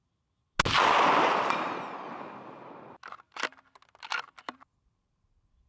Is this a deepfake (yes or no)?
no